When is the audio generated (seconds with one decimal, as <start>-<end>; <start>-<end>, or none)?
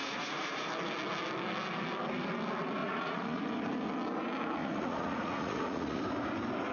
0.0-0.7; 2.8-3.4; 4.6-6.0